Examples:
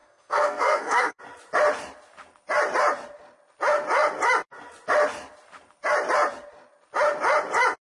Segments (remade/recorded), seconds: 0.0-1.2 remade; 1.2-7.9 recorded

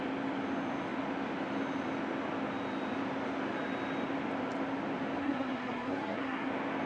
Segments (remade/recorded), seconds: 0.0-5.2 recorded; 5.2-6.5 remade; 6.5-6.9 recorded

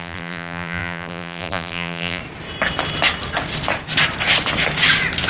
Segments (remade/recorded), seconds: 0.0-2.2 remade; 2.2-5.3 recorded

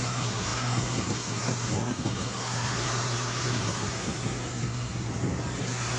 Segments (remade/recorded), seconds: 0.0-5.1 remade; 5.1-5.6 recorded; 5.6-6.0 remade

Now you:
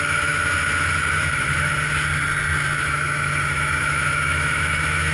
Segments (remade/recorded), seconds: 0.0-1.7 remade; 1.7-2.8 recorded; 2.8-5.1 remade

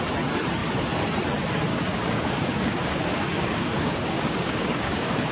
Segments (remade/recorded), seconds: 0.0-1.7 recorded; 1.7-5.3 remade

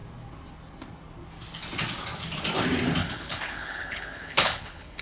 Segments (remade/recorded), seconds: 0.0-3.0 recorded; 3.0-5.0 remade

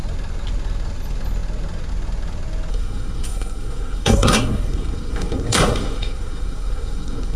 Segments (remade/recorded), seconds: 0.0-2.7 recorded; 2.7-7.4 remade